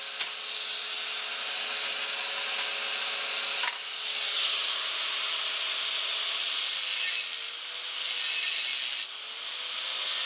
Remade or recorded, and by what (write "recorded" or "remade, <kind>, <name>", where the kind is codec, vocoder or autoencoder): recorded